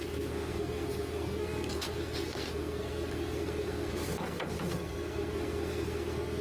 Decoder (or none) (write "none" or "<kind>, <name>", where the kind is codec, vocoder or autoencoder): codec, SNAC